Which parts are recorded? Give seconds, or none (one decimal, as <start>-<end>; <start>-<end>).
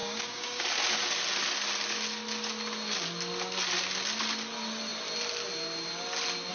0.6-6.5